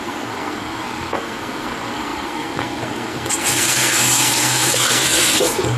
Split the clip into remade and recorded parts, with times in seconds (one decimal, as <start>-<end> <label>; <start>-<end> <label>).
0.0-5.8 remade